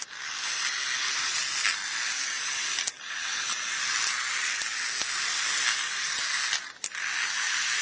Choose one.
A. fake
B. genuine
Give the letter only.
B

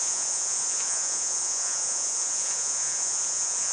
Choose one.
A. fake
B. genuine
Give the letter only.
A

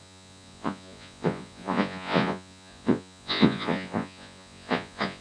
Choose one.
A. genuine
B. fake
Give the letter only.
B